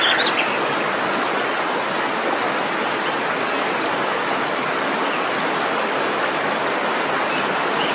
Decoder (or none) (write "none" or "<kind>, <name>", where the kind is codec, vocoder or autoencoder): none